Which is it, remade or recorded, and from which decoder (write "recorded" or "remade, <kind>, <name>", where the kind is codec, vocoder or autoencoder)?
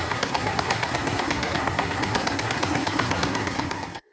remade, codec, SNAC